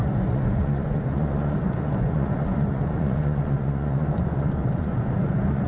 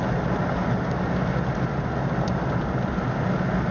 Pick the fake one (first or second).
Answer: first